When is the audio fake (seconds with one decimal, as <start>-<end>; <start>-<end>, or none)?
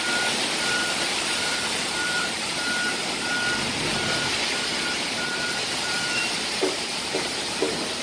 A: 0.0-3.0; 4.9-8.0